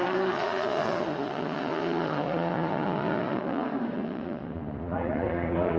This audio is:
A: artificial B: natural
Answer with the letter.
A